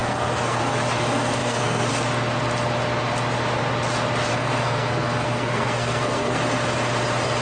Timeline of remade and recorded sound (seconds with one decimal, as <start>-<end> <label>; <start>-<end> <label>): 0.0-0.6 remade; 0.6-1.4 recorded; 1.4-1.9 remade; 1.9-4.3 recorded; 4.3-6.4 remade; 6.4-7.4 recorded